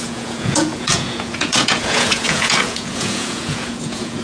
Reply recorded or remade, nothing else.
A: remade